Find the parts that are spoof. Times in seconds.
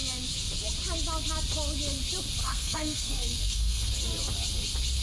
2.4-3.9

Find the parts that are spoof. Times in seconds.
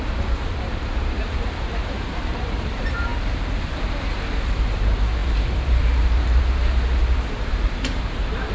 0.0-3.1; 4.4-8.5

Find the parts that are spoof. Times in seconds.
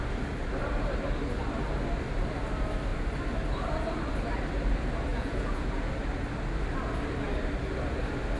5.1-5.9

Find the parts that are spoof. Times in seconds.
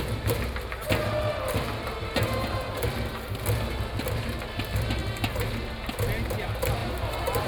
none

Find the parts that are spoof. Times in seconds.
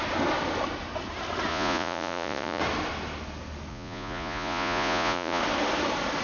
1.5-2.6; 3.7-5.4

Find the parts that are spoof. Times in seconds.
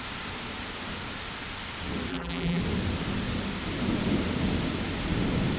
2.1-2.6